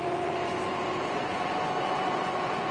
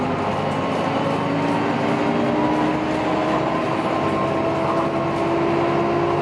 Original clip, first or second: second